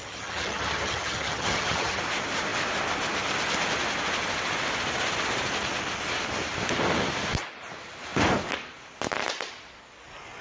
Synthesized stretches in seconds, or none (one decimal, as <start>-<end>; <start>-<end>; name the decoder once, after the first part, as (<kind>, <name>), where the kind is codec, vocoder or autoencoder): 0.0-2.0 (vocoder, HiFi-GAN)